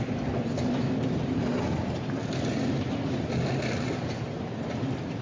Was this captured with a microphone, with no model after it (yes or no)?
yes